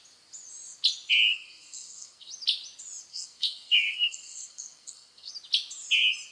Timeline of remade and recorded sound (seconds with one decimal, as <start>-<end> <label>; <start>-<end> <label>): 0.0-1.3 recorded; 1.3-2.3 remade; 2.3-3.1 recorded; 3.1-5.3 remade; 5.3-6.3 recorded